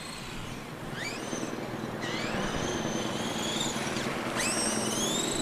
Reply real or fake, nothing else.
real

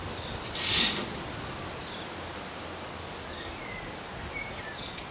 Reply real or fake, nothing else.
real